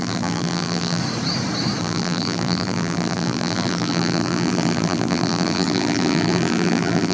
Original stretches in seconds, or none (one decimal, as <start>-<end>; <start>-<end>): 1.0-1.8